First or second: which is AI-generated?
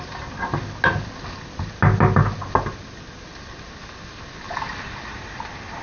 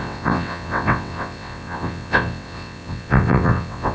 second